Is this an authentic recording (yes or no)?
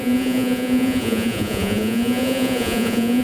no